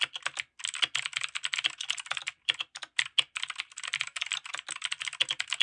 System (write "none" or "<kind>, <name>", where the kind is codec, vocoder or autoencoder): none